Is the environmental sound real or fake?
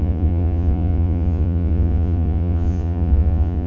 fake